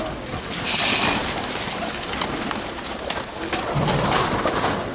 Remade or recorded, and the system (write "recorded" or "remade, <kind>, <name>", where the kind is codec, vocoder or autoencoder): recorded